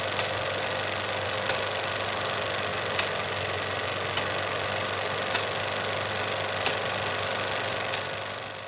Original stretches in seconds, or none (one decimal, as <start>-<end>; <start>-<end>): 0.0-8.7